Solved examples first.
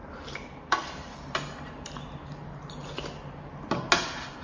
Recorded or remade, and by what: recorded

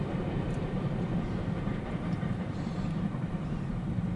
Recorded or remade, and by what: remade, vocoder, BigVGAN v2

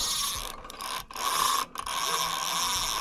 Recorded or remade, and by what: recorded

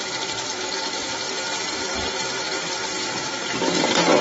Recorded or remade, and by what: recorded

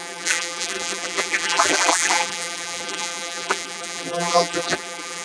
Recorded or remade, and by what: remade, vocoder, BigVGAN v2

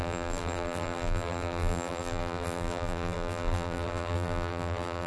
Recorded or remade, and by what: remade, vocoder, BigVGAN v2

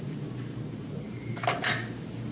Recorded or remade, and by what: remade, vocoder, BigVGAN v2